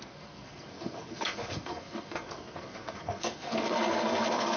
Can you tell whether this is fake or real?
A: fake